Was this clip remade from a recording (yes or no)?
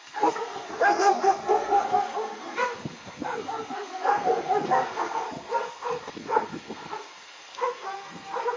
yes